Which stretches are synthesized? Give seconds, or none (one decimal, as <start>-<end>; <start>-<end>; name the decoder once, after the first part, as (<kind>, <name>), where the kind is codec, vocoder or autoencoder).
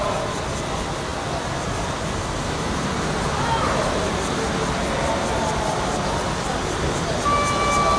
none